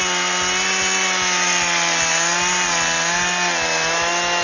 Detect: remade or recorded recorded